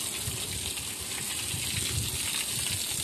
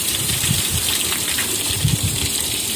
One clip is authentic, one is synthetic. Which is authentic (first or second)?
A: first